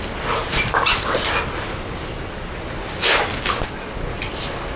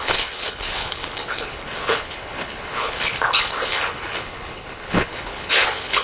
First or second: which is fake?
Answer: second